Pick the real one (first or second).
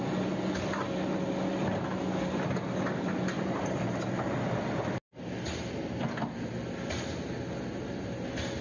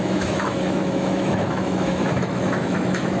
first